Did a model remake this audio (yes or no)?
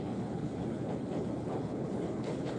yes